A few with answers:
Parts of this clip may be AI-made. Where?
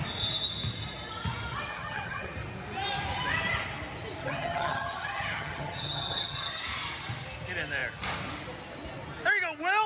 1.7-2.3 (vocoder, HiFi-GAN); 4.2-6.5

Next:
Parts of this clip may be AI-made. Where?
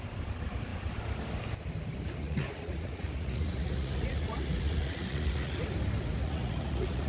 2.2-5.6 (vocoder, Vocos); 6.2-7.1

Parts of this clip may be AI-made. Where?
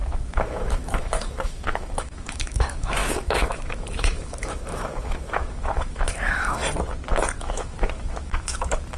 0.0-6.6 (autoencoder, DAC-VAE); 7.4-9.0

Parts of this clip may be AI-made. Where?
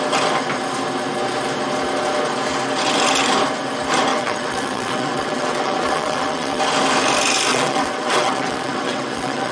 4.1-6.6 (vocoder, WaveNeXt); 7.5-9.5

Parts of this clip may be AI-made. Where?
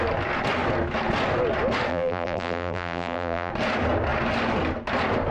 1.9-3.5 (vocoder, BigVGAN v2)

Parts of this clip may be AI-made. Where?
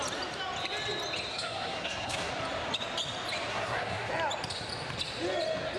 1.3-2.3 (codec, SNAC); 3.5-4.1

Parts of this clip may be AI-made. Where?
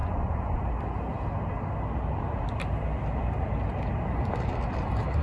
0.0-0.6 (vocoder, Vocos)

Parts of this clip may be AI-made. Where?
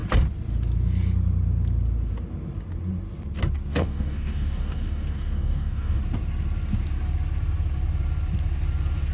3.7-6.0 (codec, DAC)